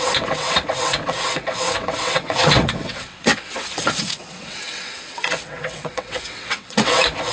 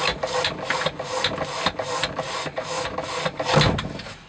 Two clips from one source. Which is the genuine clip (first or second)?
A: second